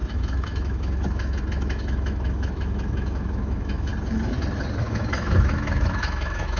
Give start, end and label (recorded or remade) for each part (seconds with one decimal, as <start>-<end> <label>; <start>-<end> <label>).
0.0-3.9 remade; 3.9-4.8 recorded; 4.8-6.6 remade